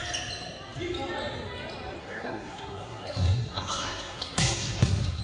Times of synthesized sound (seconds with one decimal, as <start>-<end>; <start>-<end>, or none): 2.0-5.2